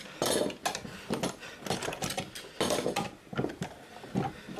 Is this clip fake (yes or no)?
no